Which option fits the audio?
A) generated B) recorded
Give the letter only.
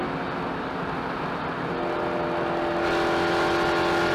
B